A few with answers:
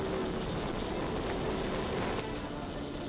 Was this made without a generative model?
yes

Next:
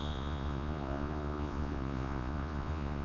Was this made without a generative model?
no